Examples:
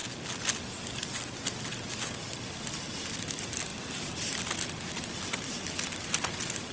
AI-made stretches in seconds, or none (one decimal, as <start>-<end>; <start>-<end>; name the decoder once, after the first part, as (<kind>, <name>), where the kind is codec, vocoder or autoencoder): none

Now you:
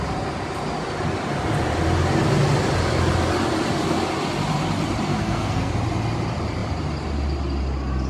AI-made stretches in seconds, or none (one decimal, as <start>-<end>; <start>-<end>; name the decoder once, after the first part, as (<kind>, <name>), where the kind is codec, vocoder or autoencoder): 5.1-5.7 (codec, SNAC)

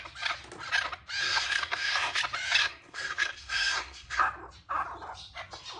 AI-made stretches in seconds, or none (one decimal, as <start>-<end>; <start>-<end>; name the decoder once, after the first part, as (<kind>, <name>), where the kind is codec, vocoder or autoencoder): 1.2-2.2 (codec, SNAC); 2.6-4.2

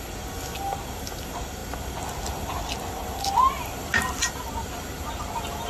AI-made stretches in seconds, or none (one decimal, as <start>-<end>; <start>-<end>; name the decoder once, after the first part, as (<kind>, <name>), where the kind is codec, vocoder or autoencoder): none

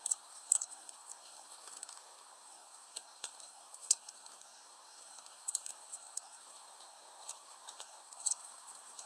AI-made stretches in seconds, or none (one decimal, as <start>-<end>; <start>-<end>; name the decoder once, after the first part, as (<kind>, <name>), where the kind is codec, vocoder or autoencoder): 0.0-9.1 (codec, SNAC)

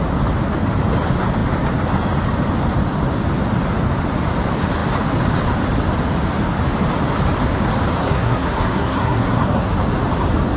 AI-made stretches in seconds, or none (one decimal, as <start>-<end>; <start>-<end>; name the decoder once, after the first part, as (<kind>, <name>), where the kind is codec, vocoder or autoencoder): 8.0-9.7 (codec, SNAC)

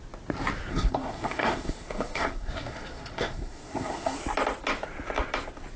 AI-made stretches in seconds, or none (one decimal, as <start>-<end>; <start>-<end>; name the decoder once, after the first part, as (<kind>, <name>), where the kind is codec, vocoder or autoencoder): 0.7-4.2 (codec, SNAC)